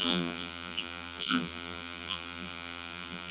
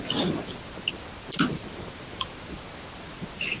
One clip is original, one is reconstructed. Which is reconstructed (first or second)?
first